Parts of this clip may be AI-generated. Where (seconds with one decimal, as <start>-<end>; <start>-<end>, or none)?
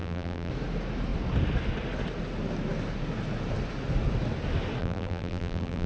0.0-0.5; 4.8-5.9